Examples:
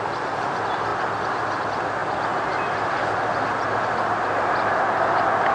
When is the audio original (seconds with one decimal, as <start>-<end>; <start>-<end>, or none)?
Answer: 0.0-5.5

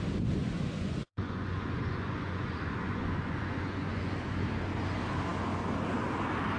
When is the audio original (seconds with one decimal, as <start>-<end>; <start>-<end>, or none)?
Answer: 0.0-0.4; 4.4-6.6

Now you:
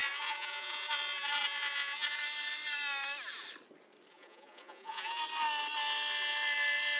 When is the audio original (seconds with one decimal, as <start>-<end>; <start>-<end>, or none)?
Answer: 2.2-4.1; 5.2-7.0

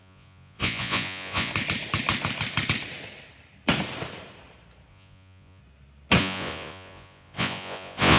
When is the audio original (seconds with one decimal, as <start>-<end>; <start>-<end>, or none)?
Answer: 1.5-4.9; 5.6-6.2

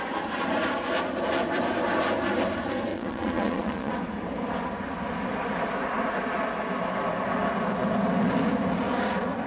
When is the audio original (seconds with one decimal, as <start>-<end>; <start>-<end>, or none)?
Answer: 0.0-2.9; 3.9-9.5